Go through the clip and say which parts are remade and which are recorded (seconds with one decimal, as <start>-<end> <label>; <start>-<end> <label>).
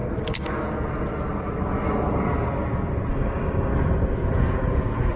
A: 0.0-3.1 recorded; 3.1-3.7 remade; 3.7-5.2 recorded